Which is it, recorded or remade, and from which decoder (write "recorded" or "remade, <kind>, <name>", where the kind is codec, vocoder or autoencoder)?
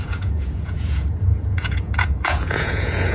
remade, vocoder, Vocos